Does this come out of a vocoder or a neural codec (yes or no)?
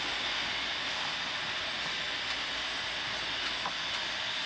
no